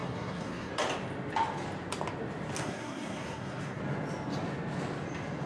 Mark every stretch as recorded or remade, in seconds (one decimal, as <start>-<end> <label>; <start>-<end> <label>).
0.0-0.7 remade; 0.7-2.6 recorded; 2.6-3.8 remade; 3.8-5.5 recorded